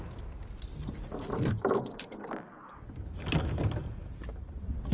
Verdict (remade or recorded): recorded